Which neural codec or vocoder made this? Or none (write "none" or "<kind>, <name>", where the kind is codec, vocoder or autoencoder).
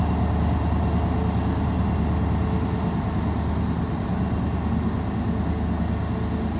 none